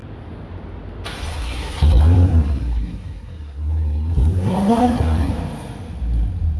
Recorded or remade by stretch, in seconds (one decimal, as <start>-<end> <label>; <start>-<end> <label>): 0.0-1.3 recorded; 1.3-5.3 remade; 5.3-6.6 recorded